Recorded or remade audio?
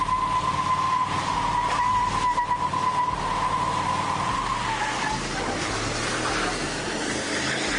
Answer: recorded